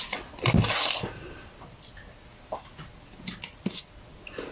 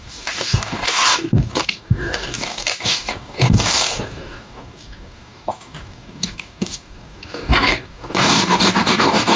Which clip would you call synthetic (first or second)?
second